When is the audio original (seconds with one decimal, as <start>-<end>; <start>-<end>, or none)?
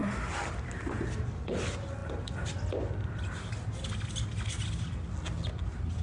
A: 0.9-6.0